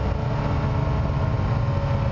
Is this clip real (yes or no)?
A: yes